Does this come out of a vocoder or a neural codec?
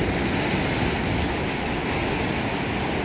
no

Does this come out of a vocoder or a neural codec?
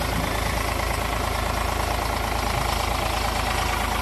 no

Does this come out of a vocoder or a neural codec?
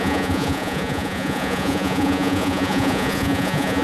yes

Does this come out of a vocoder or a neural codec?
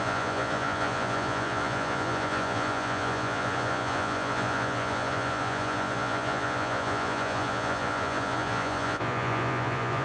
yes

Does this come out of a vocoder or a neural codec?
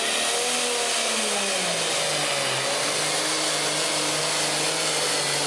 no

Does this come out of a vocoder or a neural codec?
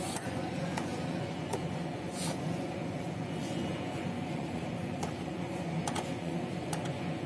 yes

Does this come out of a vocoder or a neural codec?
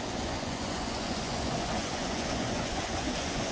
yes